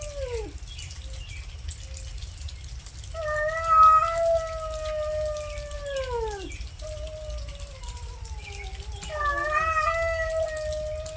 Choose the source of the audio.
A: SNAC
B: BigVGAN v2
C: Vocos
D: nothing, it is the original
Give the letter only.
D